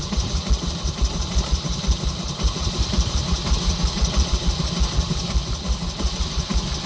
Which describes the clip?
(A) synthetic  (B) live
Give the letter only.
B